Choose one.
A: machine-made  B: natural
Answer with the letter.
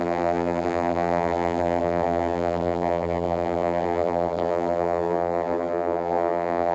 A